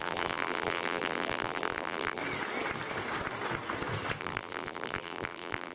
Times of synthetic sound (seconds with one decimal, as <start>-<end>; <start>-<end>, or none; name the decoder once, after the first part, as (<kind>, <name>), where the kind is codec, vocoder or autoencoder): 0.0-2.2 (vocoder, BigVGAN v2); 4.2-5.7

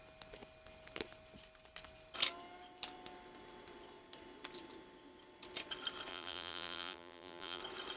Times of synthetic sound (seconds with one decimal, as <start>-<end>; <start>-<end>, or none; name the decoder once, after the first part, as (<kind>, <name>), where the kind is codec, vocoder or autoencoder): 6.1-7.6 (vocoder, BigVGAN v2)

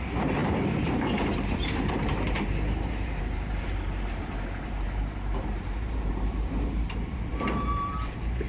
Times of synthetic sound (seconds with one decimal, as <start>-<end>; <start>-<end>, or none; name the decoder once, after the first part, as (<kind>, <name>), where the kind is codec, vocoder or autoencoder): 0.0-8.5 (vocoder, BigVGAN v2)

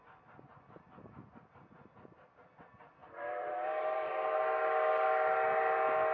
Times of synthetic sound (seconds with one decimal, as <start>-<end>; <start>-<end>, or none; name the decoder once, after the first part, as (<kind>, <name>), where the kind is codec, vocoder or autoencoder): 3.0-4.1 (vocoder, BigVGAN v2)